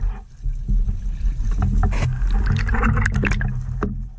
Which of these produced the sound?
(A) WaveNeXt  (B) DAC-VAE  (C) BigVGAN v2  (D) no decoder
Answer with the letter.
D